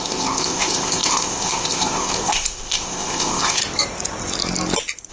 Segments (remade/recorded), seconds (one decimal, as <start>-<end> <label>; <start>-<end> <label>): 0.0-3.6 remade; 3.6-5.1 recorded